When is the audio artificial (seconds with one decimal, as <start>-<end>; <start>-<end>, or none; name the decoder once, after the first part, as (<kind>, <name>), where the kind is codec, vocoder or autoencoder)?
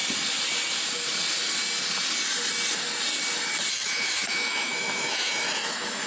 3.7-6.1 (autoencoder, DAC-VAE)